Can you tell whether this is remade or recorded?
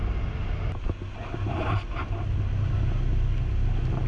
recorded